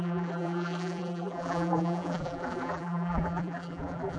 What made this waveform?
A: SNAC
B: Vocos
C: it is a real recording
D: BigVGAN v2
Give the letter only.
D